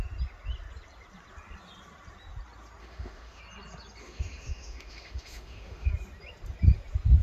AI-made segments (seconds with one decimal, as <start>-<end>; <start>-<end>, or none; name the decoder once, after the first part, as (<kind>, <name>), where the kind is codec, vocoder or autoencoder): 2.8-3.4 (autoencoder, DAC-VAE); 4.0-5.9